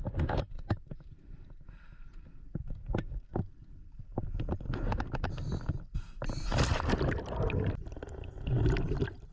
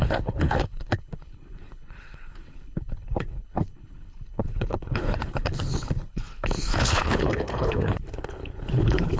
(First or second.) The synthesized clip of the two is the second